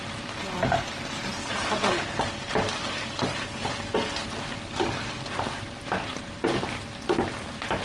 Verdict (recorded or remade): recorded